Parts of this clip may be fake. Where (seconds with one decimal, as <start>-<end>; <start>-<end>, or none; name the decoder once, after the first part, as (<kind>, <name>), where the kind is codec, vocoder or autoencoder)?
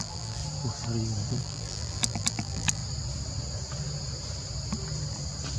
0.0-0.4 (vocoder, BigVGAN v2); 1.3-2.8